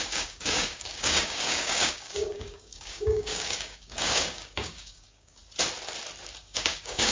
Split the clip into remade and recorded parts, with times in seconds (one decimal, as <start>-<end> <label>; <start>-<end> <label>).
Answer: 0.0-5.4 remade; 5.4-6.4 recorded; 6.4-7.1 remade